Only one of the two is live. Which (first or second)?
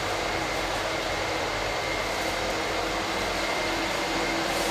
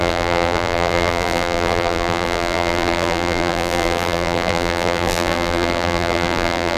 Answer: first